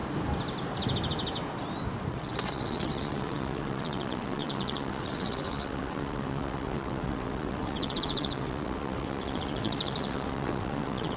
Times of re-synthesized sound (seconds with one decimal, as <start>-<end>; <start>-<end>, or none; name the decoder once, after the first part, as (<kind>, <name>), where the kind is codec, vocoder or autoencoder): 2.1-11.2 (vocoder, WaveNeXt)